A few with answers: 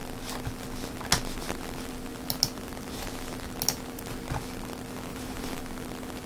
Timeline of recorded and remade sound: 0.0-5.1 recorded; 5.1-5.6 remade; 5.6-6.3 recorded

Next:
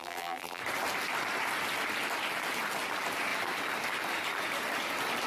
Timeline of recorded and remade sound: 0.0-0.6 remade; 0.6-5.3 recorded

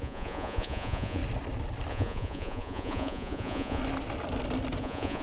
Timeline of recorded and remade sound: 0.0-1.2 remade; 1.2-1.9 recorded; 1.9-3.8 remade; 3.8-4.8 recorded; 4.8-5.2 remade

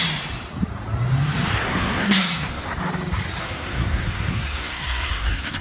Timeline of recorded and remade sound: 0.0-1.5 recorded; 1.5-2.7 remade; 2.7-3.4 recorded; 3.4-5.6 remade

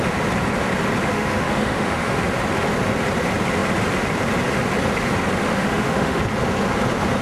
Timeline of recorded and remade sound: 0.0-1.1 recorded; 1.1-2.2 remade; 2.2-5.4 recorded; 5.4-6.2 remade; 6.2-7.2 recorded